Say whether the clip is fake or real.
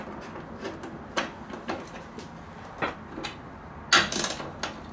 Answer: real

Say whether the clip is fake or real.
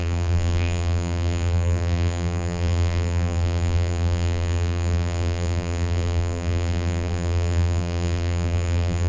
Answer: fake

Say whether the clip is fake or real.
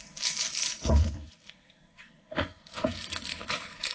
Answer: fake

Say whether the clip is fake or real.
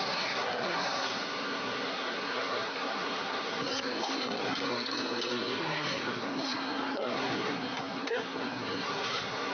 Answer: fake